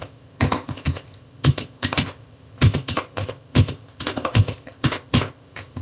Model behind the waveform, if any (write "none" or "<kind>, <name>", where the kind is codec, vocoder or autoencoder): codec, ZipCodec